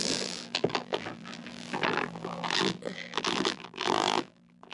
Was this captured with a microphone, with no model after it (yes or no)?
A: no